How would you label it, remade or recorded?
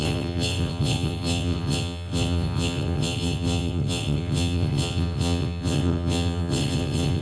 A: remade